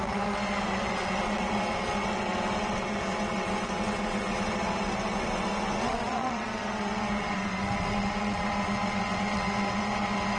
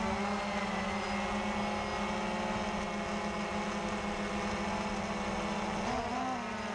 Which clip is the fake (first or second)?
first